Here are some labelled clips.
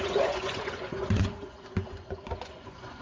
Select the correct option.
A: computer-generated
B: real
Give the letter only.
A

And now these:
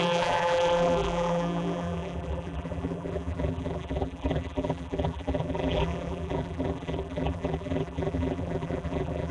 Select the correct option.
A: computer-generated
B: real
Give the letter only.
A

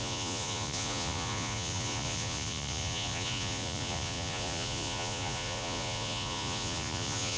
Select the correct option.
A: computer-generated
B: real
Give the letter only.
A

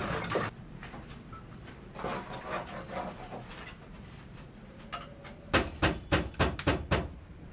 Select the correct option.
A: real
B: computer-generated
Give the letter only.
A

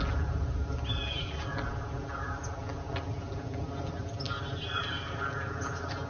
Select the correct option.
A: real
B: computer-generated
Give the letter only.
A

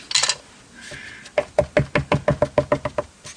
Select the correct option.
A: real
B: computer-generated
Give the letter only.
A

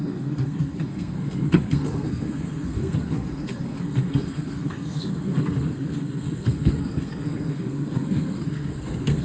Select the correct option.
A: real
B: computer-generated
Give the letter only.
B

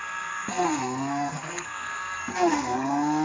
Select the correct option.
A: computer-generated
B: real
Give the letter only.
A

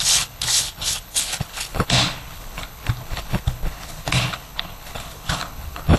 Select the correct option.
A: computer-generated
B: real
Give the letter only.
A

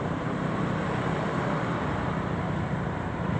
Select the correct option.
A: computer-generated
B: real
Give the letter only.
A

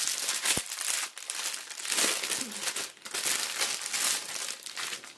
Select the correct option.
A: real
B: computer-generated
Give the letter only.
A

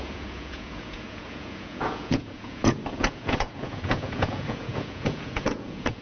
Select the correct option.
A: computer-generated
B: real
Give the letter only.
A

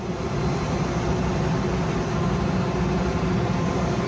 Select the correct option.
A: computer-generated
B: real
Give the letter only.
B